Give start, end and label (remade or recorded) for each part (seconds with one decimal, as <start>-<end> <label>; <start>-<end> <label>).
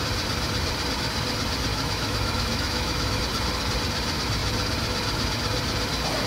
0.0-1.7 recorded; 1.7-3.2 remade; 3.2-6.3 recorded